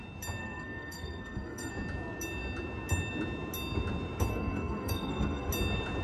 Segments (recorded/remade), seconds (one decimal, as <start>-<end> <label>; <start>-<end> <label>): 0.0-0.4 recorded; 0.4-1.7 remade; 1.7-4.3 recorded; 4.3-5.5 remade; 5.5-6.0 recorded